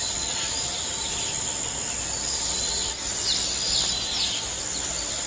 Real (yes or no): yes